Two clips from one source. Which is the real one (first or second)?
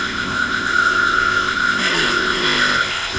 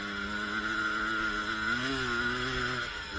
second